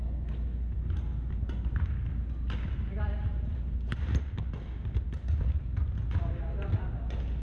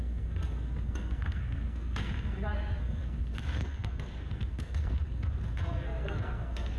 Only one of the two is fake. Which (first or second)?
second